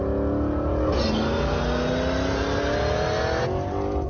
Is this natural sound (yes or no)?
yes